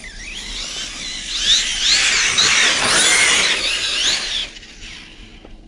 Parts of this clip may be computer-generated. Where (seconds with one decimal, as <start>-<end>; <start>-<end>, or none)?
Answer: none